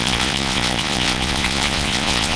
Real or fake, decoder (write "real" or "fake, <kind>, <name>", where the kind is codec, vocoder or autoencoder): fake, vocoder, Vocos